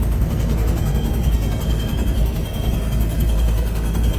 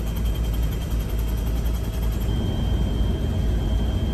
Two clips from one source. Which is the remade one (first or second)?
first